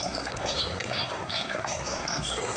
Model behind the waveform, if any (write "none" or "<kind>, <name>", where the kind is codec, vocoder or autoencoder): codec, SNAC